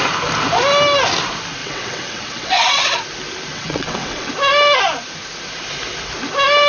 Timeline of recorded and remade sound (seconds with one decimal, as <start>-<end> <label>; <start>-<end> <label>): 0.0-1.6 recorded; 1.6-3.0 remade; 3.0-3.5 recorded; 3.5-4.3 remade; 4.3-6.7 recorded